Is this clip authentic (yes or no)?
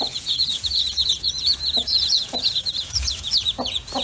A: no